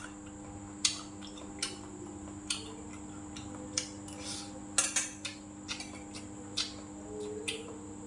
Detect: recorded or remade recorded